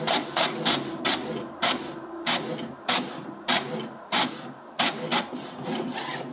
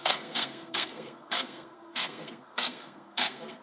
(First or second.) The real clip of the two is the first